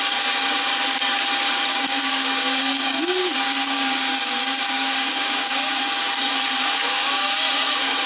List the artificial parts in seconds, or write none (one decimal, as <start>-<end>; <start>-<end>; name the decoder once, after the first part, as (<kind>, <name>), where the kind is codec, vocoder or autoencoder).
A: 1.7-5.8 (codec, DAC)